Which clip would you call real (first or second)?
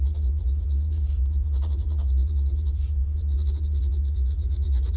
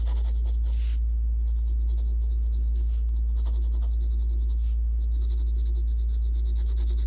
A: second